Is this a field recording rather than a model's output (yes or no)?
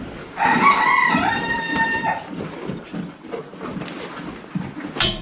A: no